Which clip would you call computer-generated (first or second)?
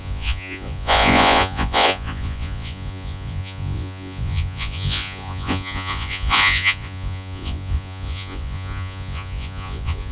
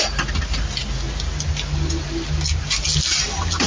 first